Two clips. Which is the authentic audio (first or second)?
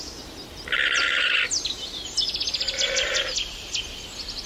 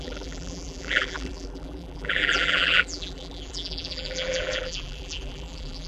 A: first